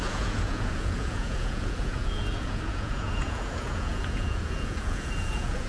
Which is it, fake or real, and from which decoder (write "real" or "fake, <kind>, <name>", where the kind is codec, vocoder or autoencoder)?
fake, vocoder, Vocos